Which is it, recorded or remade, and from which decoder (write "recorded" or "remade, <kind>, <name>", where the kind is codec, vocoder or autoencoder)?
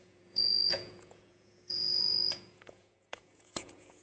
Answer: remade, vocoder, Vocos